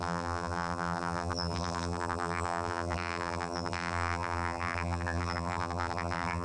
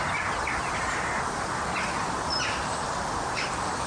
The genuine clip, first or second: second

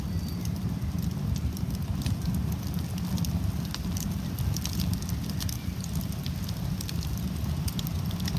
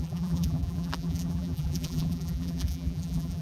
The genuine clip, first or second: first